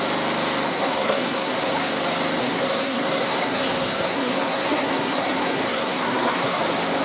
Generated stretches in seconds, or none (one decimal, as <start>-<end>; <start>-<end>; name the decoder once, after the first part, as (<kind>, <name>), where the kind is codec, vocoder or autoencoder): 0.7-1.7 (codec, SNAC); 2.4-6.6

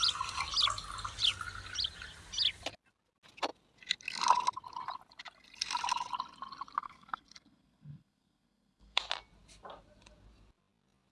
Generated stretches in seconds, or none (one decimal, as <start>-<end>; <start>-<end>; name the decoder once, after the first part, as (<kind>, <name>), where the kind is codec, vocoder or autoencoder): 6.8-9.0 (codec, SNAC)